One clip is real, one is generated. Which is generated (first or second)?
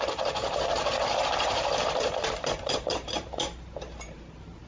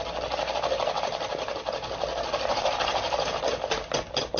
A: first